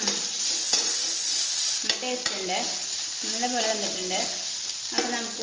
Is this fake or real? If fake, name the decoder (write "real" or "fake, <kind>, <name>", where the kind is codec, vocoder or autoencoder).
real